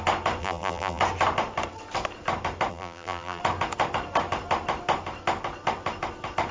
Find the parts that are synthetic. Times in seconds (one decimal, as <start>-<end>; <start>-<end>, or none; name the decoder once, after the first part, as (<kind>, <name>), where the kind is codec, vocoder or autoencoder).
0.4-1.0 (vocoder, BigVGAN v2); 2.7-3.4